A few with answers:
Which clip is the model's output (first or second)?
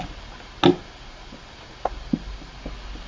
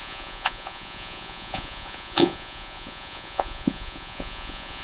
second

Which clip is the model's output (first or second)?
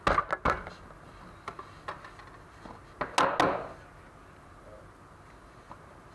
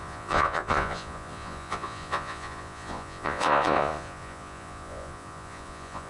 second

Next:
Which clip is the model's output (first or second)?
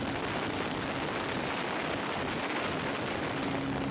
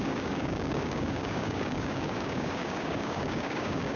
second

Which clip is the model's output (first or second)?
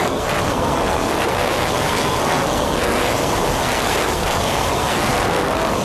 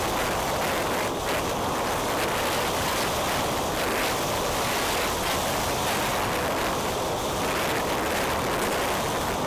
first